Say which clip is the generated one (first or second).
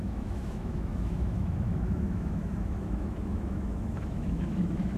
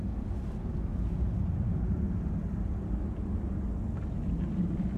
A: first